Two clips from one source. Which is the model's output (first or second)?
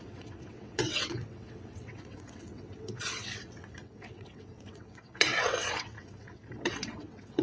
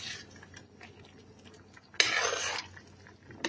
first